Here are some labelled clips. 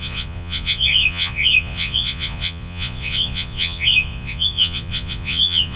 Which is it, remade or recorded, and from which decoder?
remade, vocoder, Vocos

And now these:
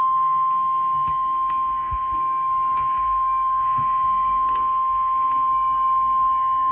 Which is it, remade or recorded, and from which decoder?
remade, codec, SNAC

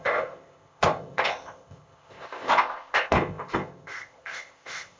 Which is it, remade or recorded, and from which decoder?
remade, codec, ZipCodec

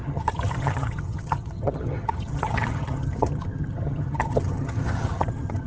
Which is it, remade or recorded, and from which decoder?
remade, vocoder, HiFi-GAN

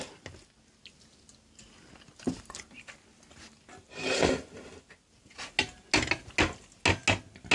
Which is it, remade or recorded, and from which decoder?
recorded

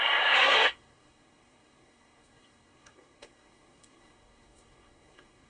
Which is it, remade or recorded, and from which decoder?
remade, codec, SNAC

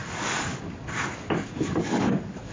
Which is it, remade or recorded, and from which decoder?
remade, codec, DAC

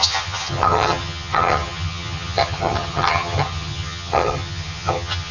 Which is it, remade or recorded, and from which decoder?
remade, vocoder, HiFi-GAN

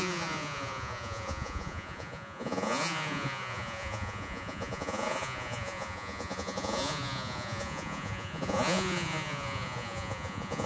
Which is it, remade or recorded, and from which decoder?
remade, vocoder, Vocos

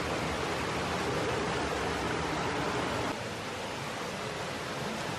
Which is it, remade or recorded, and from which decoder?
recorded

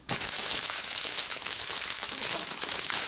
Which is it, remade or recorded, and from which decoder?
remade, autoencoder, DAC-VAE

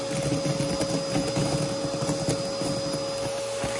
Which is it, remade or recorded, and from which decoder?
recorded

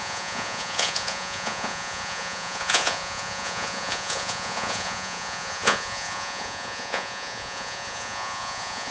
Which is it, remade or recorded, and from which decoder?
remade, vocoder, Vocos